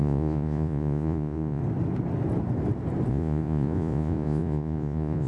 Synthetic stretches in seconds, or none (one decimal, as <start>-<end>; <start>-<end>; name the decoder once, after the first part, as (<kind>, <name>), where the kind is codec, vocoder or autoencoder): 0.0-1.6 (vocoder, Vocos); 3.1-5.3